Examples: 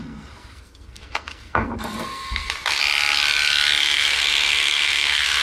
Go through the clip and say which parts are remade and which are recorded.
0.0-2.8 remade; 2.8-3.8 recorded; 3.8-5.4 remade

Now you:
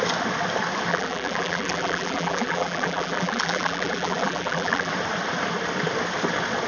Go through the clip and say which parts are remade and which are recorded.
0.0-0.9 recorded; 0.9-4.9 remade; 4.9-6.7 recorded

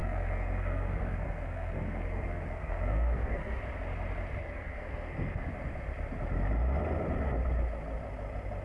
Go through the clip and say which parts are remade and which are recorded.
0.0-3.6 remade; 3.6-4.4 recorded; 4.4-5.5 remade; 5.5-8.6 recorded

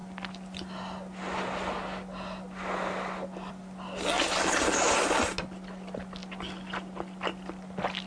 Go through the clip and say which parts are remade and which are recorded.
0.0-8.1 recorded